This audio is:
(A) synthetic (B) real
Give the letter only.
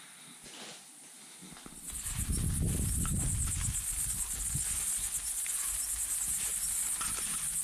B